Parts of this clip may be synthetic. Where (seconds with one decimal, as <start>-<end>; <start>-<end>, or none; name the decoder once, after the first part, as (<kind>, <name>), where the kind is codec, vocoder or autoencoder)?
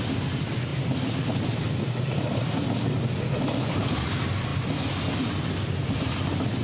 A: 4.5-5.3 (vocoder, BigVGAN v2)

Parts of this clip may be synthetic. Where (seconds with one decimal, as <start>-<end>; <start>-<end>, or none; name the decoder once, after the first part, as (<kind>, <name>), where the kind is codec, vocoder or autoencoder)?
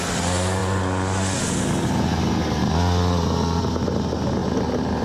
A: none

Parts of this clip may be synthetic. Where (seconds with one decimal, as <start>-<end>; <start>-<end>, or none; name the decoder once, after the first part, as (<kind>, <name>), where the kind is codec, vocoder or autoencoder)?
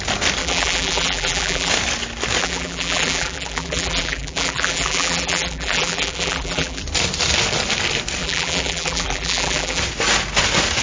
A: 0.4-1.7 (vocoder, BigVGAN v2); 2.4-6.8; 8.2-9.8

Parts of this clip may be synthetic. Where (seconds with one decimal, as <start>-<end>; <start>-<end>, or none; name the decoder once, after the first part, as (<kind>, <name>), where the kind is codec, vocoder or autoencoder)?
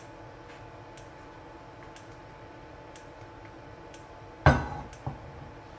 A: none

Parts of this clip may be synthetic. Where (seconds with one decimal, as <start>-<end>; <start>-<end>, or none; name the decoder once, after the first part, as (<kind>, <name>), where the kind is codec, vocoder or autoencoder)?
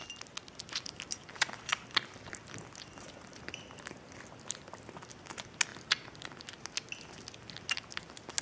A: none